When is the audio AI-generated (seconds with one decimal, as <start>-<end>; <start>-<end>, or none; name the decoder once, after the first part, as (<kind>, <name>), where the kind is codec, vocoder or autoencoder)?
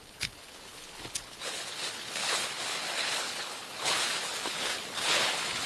0.0-5.7 (codec, HILCodec)